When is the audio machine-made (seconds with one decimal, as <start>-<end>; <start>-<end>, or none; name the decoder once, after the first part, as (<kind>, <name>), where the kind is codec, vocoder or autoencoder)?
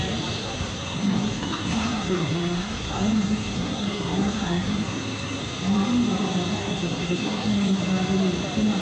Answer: 0.4-5.4 (codec, SNAC); 6.6-7.8